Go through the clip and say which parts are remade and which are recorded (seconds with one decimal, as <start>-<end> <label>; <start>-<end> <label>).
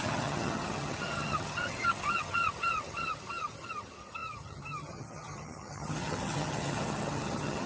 0.0-7.7 remade